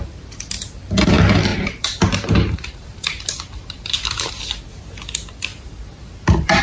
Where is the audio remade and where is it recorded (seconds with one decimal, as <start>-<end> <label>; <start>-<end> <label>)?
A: 0.0-1.5 recorded; 1.5-4.3 remade; 4.3-5.5 recorded; 5.5-6.6 remade

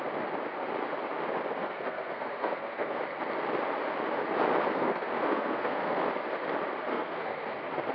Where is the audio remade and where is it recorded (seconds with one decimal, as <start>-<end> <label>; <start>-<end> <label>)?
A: 0.0-1.6 recorded; 1.6-3.0 remade; 3.0-4.7 recorded; 4.7-6.0 remade; 6.0-6.9 recorded; 6.9-7.9 remade

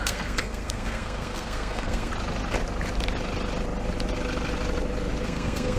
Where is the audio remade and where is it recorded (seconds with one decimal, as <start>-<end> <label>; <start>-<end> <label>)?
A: 0.0-2.1 remade; 2.1-5.2 recorded; 5.2-5.8 remade

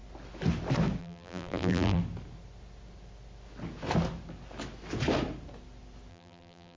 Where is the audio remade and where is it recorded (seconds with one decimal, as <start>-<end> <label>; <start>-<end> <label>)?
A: 0.0-1.0 recorded; 1.0-2.0 remade; 2.0-6.1 recorded; 6.1-6.8 remade

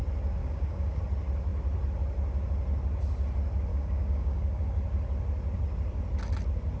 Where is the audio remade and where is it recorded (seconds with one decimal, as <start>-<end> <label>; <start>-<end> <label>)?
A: 0.0-0.4 recorded; 0.4-1.0 remade; 1.0-3.7 recorded; 3.7-4.6 remade; 4.6-6.8 recorded

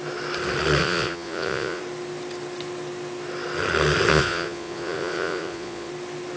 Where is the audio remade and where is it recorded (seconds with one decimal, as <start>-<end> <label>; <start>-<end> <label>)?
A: 0.0-0.8 recorded; 0.8-1.8 remade; 1.8-4.1 recorded; 4.1-5.9 remade; 5.9-6.4 recorded